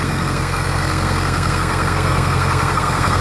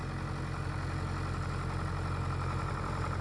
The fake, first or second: first